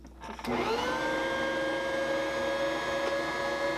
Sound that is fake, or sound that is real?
real